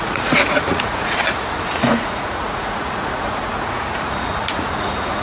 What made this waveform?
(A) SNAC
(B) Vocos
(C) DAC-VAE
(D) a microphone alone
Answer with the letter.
B